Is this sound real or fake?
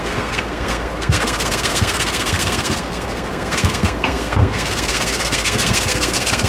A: fake